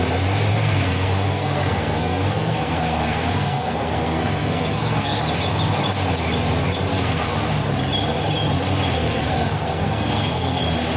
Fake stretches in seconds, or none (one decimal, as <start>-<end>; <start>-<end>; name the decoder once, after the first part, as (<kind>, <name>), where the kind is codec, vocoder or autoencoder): 0.5-5.2 (codec, SNAC); 6.9-7.4; 8.9-10.6